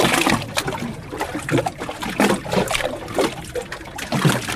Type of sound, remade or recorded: recorded